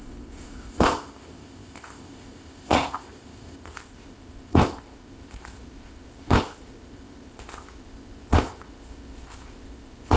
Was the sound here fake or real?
fake